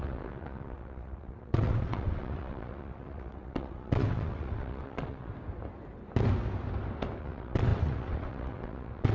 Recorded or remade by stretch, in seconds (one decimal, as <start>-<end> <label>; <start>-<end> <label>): 0.0-5.3 remade; 5.3-7.2 recorded; 7.2-9.1 remade